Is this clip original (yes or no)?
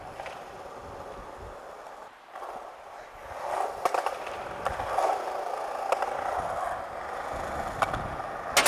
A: yes